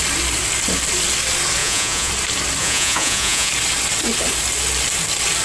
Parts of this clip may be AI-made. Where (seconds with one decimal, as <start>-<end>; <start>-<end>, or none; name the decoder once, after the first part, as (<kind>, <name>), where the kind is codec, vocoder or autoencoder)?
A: 1.6-2.1 (vocoder, Vocos); 2.6-3.5